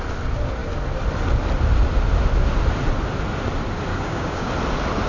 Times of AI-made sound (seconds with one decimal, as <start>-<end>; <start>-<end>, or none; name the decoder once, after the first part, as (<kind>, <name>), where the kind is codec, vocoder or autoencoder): 3.9-4.5 (codec, DAC)